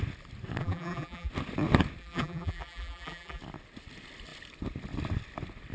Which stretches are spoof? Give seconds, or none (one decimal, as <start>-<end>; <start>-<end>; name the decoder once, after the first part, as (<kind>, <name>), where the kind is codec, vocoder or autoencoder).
0.6-1.3 (vocoder, BigVGAN v2); 2.0-3.4